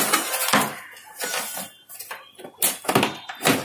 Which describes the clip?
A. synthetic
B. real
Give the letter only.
B